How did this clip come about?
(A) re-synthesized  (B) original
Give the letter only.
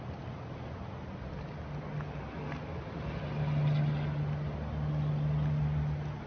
B